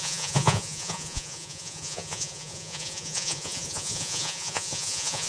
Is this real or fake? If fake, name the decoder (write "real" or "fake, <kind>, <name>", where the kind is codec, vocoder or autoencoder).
fake, vocoder, Vocos